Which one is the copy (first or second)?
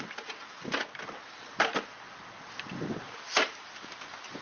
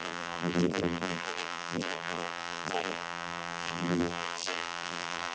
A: second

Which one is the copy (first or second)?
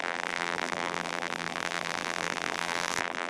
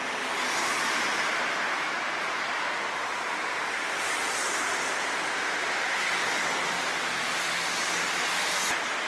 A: first